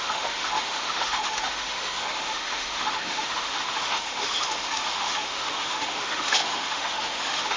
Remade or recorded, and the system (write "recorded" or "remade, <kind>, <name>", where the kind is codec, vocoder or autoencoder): remade, autoencoder, DAC-VAE